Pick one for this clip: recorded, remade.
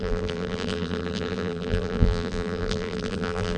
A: remade